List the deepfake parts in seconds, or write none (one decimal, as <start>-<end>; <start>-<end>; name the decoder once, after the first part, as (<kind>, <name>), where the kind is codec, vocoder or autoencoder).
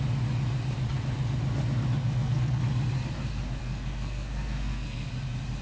2.0-2.6 (codec, SNAC); 3.6-5.1